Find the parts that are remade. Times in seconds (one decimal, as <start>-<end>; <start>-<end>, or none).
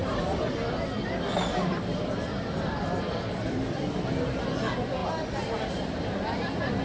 2.3-4.4; 5.0-6.8